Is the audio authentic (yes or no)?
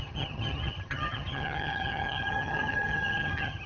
no